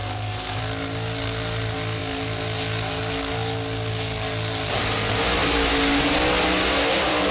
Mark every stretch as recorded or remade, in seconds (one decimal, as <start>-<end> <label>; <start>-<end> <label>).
0.0-0.6 remade; 0.6-7.3 recorded